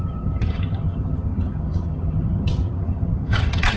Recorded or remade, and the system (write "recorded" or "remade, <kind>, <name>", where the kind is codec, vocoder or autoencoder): remade, vocoder, HiFi-GAN